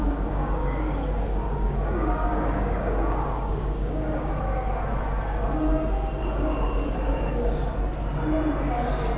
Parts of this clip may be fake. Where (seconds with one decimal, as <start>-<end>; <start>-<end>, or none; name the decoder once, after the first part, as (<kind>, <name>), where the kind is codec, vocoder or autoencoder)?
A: 0.0-4.4 (codec, DAC); 6.2-7.6